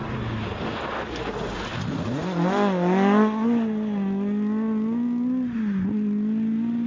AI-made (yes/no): no